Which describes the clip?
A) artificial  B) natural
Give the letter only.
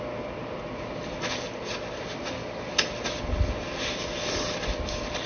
B